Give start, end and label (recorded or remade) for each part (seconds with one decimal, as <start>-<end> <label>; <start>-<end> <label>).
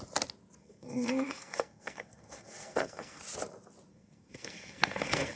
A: 0.0-0.6 recorded; 0.6-3.2 remade; 3.2-3.9 recorded; 3.9-5.4 remade